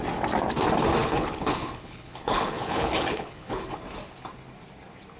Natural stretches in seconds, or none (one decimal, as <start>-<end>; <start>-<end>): 0.0-1.0; 3.8-5.2